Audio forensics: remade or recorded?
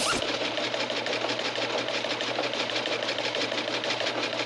remade